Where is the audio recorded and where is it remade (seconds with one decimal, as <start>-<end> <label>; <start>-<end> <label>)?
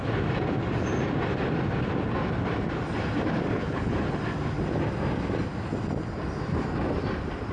0.0-3.5 recorded; 3.5-4.2 remade; 4.2-7.5 recorded